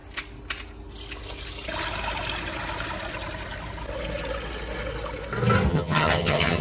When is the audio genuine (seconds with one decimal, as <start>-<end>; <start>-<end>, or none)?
0.0-5.7